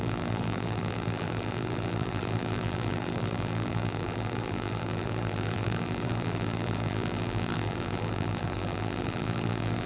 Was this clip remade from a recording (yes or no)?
yes